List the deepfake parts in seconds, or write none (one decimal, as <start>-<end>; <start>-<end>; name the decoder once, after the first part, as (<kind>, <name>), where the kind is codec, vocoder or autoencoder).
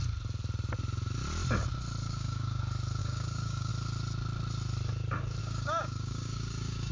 2.0-2.6 (codec, DAC); 3.0-3.7; 5.4-6.9